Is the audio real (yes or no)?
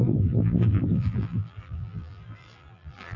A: no